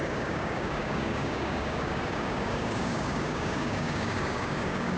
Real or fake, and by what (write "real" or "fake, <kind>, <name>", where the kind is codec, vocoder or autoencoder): fake, codec, DAC